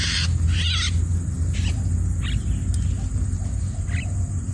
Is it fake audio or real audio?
real